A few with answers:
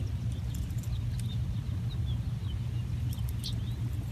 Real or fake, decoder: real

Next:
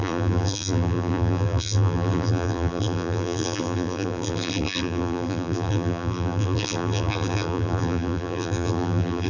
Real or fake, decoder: fake, vocoder, BigVGAN v2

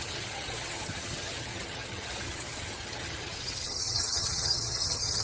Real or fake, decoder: fake, vocoder, HiFi-GAN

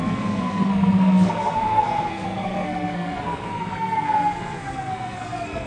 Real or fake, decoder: fake, codec, SNAC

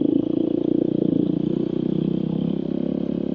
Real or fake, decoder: real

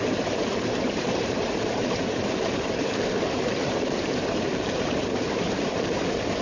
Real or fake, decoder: fake, vocoder, BigVGAN v2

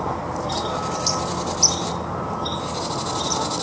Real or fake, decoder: real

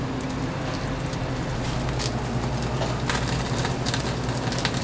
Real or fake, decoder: real